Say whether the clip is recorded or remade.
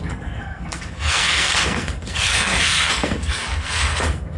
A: remade